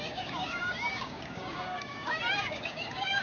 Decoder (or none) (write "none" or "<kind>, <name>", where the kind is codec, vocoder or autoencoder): codec, DAC